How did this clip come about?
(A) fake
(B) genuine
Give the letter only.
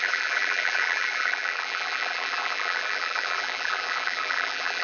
A